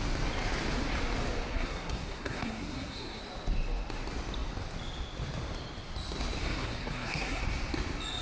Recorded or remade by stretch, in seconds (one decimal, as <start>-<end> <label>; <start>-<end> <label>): 0.0-1.5 recorded; 1.5-3.2 remade; 3.2-6.4 recorded; 6.4-7.4 remade; 7.4-8.2 recorded